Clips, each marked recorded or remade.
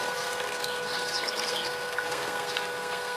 remade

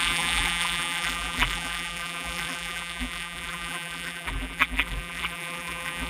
remade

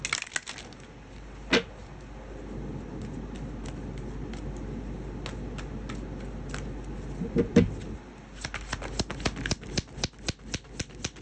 recorded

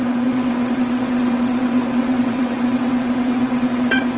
remade